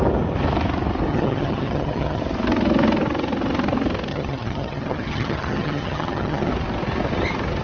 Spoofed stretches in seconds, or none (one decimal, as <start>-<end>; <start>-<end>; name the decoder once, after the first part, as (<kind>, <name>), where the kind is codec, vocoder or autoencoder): 1.1-2.2 (vocoder, HiFi-GAN); 4.1-6.5